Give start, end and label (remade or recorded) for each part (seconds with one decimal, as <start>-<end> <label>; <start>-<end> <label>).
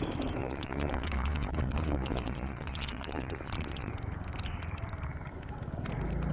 0.0-0.4 recorded; 0.4-3.9 remade; 3.9-6.3 recorded